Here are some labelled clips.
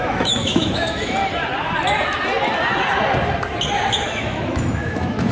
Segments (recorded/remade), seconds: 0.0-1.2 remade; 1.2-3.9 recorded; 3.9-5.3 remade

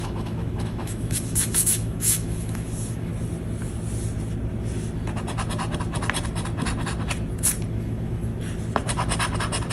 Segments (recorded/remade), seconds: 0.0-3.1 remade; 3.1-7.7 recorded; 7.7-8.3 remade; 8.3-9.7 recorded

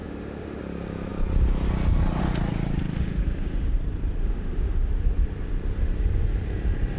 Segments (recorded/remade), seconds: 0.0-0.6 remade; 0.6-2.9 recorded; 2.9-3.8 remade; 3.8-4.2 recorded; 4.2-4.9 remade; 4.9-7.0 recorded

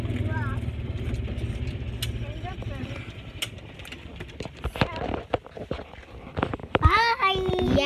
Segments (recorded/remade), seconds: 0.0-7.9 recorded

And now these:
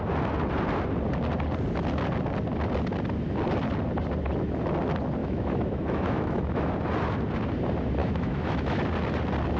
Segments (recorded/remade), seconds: 0.0-5.2 recorded; 5.2-6.7 remade; 6.7-8.0 recorded; 8.0-8.8 remade; 8.8-9.6 recorded